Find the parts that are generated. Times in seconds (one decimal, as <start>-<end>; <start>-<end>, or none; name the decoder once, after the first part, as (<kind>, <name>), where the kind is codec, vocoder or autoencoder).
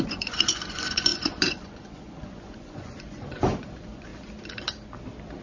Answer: 0.0-4.1 (vocoder, Vocos)